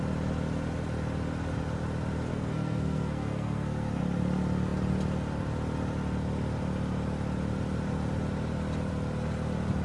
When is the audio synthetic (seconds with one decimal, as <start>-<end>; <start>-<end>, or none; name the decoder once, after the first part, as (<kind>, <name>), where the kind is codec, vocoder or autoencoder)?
2.3-4.0 (codec, SNAC)